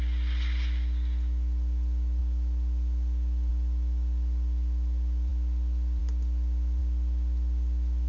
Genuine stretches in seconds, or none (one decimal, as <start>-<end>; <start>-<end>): 0.0-8.1